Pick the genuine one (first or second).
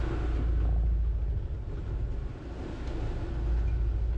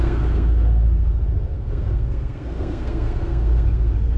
first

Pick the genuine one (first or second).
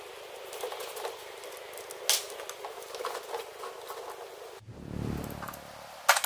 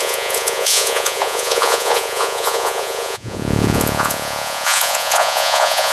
first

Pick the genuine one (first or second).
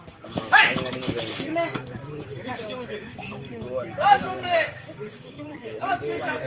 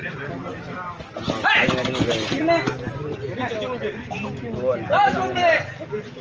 second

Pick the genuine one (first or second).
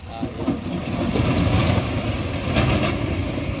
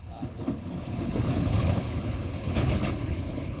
first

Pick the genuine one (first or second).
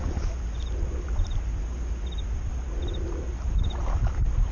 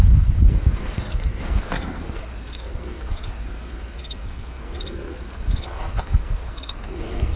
first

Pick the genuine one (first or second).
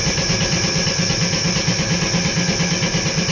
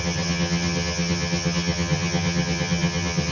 first